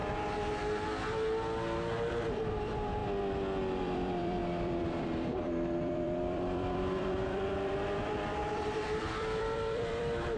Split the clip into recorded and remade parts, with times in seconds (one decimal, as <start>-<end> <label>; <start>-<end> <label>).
0.0-2.1 recorded; 2.1-3.0 remade; 3.0-3.8 recorded; 3.8-10.4 remade